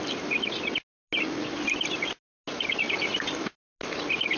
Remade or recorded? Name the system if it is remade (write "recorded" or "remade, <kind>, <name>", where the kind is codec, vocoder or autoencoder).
recorded